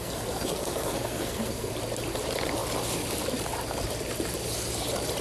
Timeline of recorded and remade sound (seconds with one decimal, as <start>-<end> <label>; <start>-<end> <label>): 0.0-1.7 remade; 1.7-5.2 recorded